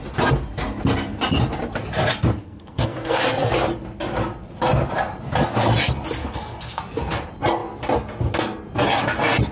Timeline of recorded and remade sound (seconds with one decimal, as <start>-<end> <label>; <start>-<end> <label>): 0.0-2.4 recorded; 2.4-3.2 remade; 3.2-6.2 recorded; 6.2-6.8 remade; 6.8-9.5 recorded